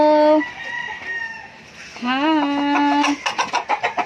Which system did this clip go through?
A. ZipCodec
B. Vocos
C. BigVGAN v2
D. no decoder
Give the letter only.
D